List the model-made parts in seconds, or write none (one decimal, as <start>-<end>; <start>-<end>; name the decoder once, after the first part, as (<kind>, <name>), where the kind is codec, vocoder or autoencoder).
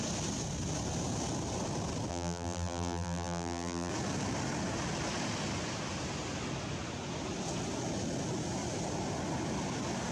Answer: 2.1-3.9 (vocoder, BigVGAN v2)